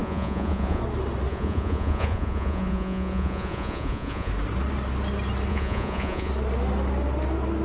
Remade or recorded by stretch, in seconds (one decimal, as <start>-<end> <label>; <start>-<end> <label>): 0.0-0.8 remade; 0.8-1.3 recorded; 1.3-4.3 remade; 4.3-5.5 recorded; 5.5-6.3 remade; 6.3-7.6 recorded